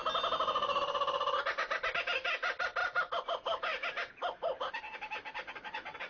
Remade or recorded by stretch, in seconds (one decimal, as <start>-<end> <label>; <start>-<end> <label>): 0.0-6.1 recorded